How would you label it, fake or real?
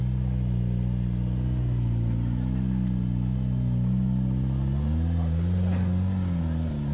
real